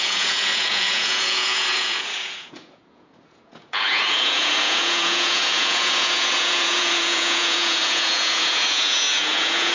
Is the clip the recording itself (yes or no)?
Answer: no